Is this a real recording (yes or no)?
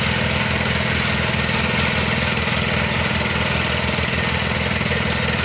yes